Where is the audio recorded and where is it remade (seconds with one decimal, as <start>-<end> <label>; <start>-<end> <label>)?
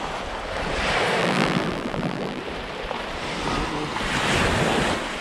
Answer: 0.0-1.2 recorded; 1.2-2.4 remade; 2.4-5.2 recorded